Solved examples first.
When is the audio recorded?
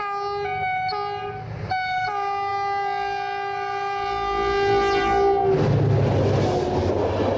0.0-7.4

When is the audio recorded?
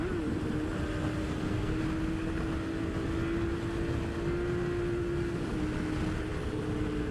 0.0-1.2; 1.8-7.1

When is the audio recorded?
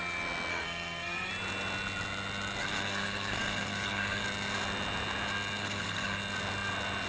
0.0-0.5; 1.3-2.6; 4.2-5.6; 6.2-7.1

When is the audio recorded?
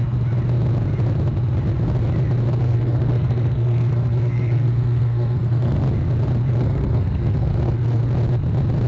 0.0-2.6; 5.8-6.5; 8.0-8.9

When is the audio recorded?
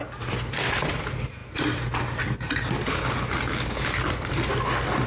0.0-5.1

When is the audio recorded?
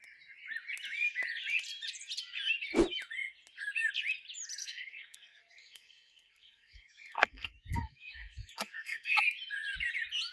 0.0-4.6; 9.2-10.3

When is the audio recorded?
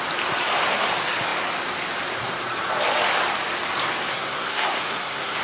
0.0-4.1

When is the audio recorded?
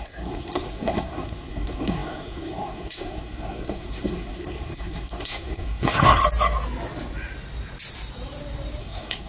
6.2-8.8